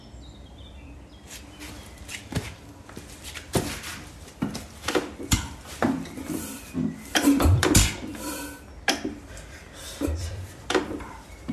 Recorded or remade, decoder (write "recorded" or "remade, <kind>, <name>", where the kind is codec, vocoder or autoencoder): remade, vocoder, BigVGAN v2